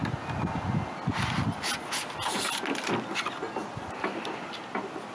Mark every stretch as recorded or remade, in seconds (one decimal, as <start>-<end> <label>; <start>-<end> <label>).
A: 0.0-3.6 recorded; 3.6-5.1 remade